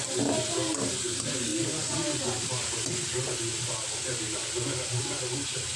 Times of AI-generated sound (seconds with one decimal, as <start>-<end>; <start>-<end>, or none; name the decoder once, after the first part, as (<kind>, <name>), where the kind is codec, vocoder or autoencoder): none